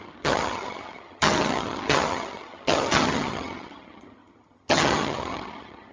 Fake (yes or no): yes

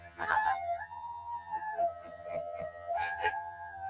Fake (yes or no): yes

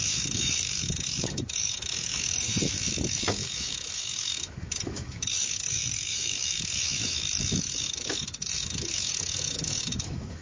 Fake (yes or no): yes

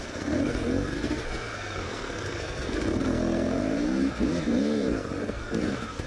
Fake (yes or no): yes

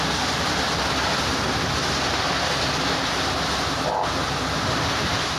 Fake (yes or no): no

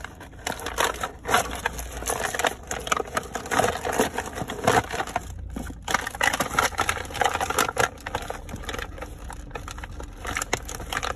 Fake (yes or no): no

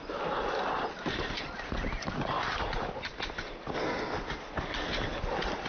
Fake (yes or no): no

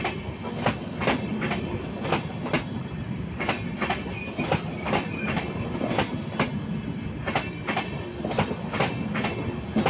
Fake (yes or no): no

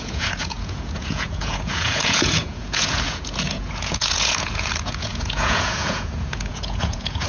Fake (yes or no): yes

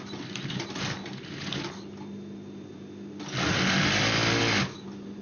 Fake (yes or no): no